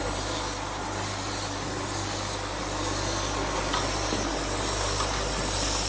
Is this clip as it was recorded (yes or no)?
yes